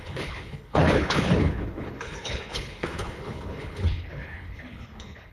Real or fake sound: fake